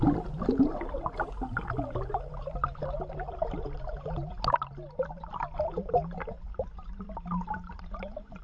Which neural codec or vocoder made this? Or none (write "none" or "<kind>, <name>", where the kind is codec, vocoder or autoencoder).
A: none